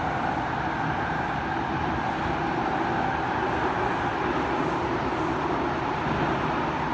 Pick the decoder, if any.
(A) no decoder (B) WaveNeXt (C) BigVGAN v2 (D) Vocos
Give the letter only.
A